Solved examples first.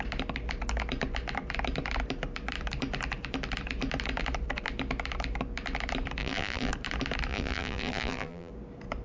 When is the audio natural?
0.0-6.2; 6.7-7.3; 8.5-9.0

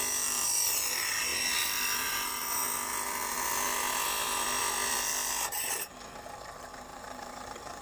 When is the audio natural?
0.0-6.9